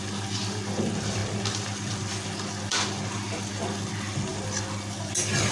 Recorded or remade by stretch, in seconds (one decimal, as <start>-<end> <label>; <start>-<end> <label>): 0.0-5.5 recorded